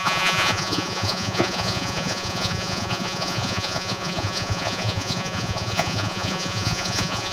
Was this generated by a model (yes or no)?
yes